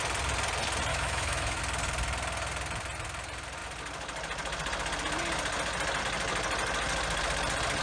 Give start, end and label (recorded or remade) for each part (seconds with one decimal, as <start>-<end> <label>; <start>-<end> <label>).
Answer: 0.0-0.9 recorded; 0.9-1.6 remade; 1.6-7.8 recorded